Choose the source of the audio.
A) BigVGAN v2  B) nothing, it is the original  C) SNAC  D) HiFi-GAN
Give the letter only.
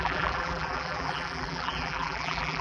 A